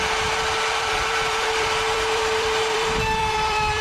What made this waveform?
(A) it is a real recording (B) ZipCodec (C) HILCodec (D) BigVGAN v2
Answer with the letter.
D